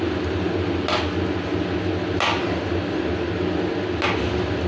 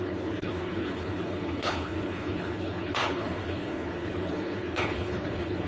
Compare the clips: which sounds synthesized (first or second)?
second